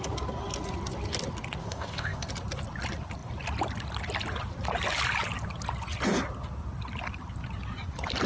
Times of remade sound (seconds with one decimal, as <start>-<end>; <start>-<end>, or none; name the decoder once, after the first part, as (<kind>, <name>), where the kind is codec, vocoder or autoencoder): 1.6-2.3 (codec, ZipCodec)